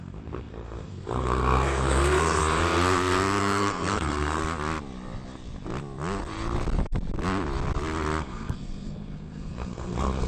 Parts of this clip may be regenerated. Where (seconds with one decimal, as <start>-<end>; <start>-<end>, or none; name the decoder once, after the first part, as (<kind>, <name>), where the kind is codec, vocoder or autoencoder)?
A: 0.0-2.4 (codec, SNAC); 3.4-4.4; 8.2-10.3